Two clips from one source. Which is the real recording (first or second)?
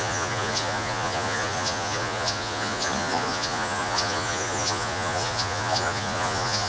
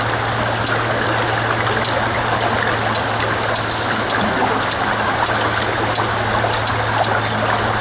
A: second